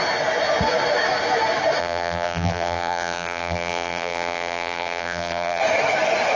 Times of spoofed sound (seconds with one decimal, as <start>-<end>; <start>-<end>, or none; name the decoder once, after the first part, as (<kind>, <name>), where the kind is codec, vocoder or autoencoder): 1.8-5.6 (vocoder, BigVGAN v2)